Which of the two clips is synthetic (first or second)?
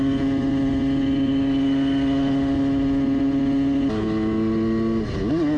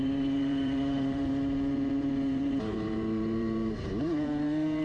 second